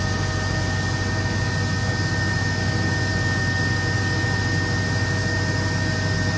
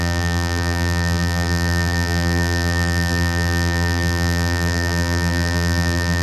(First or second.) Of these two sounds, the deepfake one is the second